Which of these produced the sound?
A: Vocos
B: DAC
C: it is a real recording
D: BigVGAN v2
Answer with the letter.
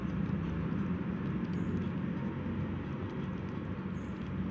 C